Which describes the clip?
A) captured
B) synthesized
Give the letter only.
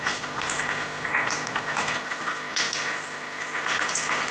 A